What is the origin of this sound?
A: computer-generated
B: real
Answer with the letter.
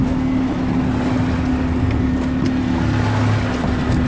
B